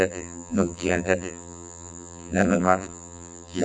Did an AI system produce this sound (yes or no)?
yes